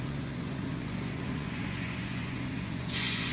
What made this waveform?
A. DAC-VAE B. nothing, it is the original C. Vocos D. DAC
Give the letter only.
C